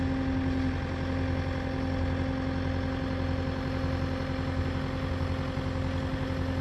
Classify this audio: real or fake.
real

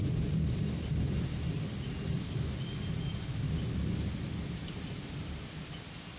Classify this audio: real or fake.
real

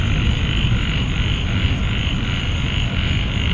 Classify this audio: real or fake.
real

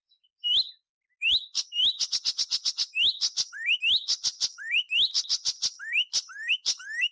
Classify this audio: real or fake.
real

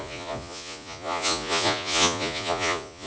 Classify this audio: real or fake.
fake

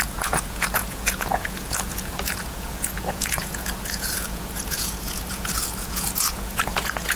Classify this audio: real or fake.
fake